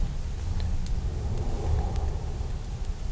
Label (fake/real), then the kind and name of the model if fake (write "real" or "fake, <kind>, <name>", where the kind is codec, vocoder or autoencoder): real